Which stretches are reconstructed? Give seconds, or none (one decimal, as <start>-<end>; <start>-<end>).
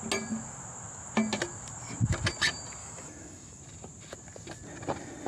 2.8-3.6